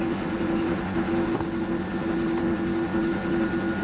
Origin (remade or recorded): recorded